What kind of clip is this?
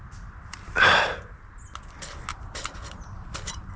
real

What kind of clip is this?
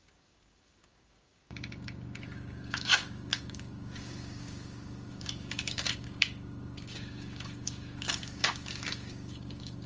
fake